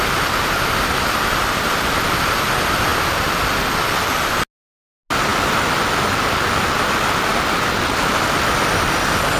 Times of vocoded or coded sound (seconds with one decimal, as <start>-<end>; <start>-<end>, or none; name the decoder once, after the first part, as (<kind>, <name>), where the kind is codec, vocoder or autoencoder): none